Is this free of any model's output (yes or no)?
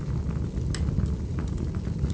yes